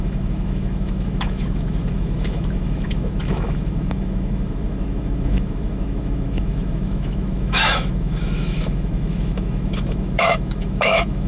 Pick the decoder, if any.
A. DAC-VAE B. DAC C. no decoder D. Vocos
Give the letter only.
A